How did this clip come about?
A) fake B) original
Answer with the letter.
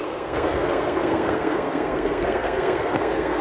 A